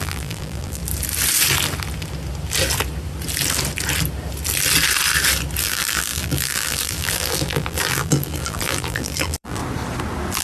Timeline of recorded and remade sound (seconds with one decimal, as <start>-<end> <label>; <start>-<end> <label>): 0.0-0.8 remade; 0.8-5.6 recorded; 5.6-9.6 remade; 9.6-10.4 recorded